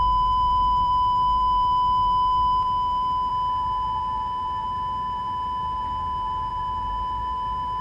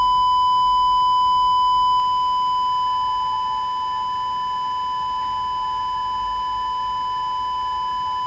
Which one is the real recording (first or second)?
second